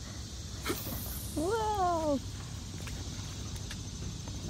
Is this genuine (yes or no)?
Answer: yes